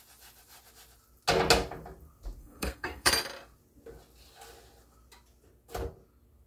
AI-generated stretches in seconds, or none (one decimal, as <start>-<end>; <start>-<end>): 2.4-3.1